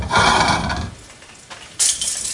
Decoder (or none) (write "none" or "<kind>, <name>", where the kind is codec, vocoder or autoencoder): vocoder, BigVGAN v2